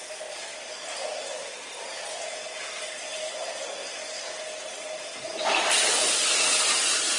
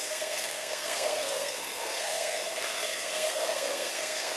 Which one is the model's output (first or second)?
second